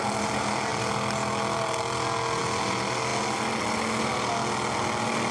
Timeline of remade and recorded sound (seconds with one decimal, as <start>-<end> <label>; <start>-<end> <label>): 0.0-5.3 recorded